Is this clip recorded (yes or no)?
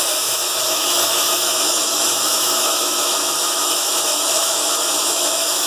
no